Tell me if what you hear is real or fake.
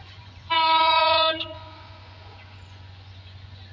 fake